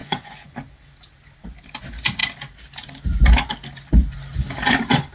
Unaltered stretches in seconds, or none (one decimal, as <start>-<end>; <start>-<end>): 0.6-5.1